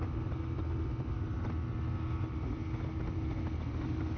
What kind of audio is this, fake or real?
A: real